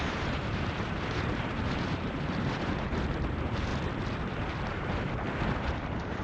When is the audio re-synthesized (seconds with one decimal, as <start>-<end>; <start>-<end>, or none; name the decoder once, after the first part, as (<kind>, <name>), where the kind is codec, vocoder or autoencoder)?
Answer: 0.0-3.7 (vocoder, BigVGAN v2); 4.2-6.2